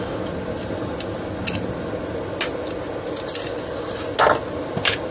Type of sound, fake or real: real